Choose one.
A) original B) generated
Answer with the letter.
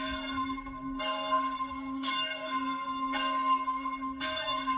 B